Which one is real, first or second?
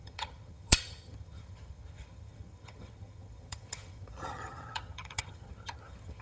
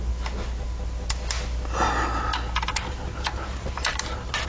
second